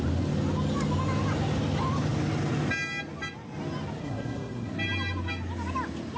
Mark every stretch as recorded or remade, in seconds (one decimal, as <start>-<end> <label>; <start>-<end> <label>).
0.0-4.0 recorded; 4.0-4.7 remade; 4.7-6.2 recorded